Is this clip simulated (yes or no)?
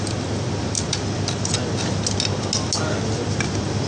no